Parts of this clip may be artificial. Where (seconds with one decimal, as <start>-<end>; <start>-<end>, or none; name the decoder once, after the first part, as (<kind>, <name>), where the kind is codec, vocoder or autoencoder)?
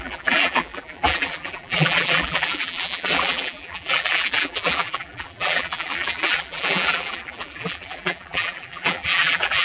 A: 0.0-9.6 (vocoder, BigVGAN v2)